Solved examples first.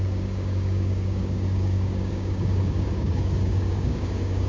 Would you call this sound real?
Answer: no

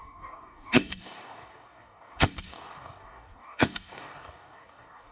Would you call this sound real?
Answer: no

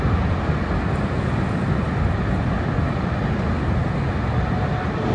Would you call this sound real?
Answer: yes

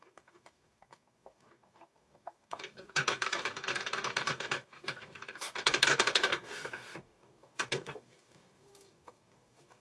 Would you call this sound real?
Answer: no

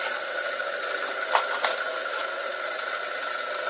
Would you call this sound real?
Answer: yes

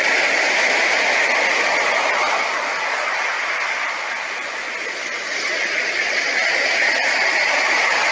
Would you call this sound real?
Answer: yes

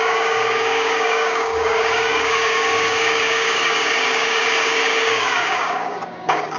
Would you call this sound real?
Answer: no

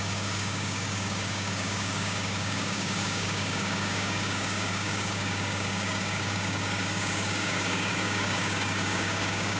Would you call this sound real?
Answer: no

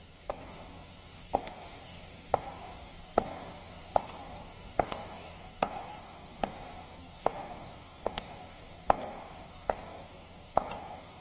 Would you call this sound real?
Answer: no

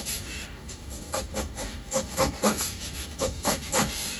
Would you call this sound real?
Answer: no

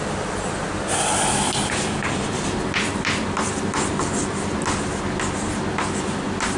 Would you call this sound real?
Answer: yes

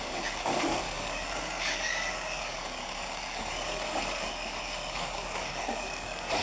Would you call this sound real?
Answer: no